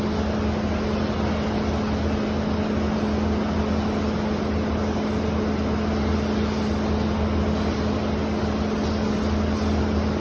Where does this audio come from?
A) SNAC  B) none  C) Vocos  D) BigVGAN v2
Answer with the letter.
B